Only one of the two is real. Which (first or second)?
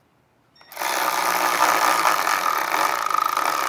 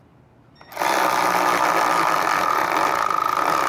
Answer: second